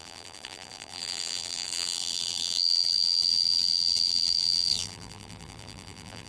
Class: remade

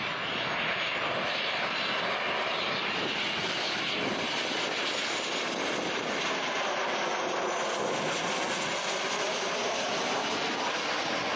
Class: recorded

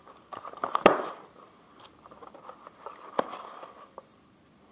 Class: remade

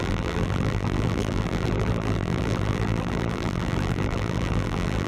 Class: remade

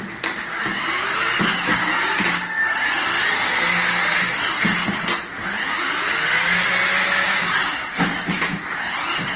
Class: recorded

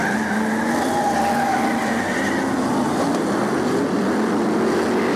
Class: recorded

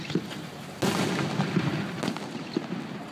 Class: recorded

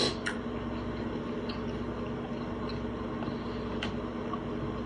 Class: recorded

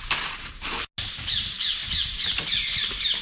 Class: recorded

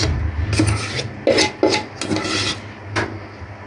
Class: recorded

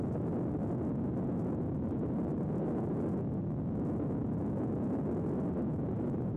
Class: recorded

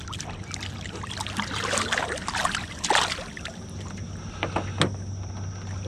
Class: recorded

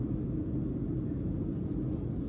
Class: recorded